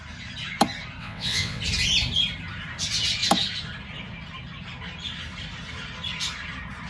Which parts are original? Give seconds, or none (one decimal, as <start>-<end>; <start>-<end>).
0.0-1.0; 1.6-6.9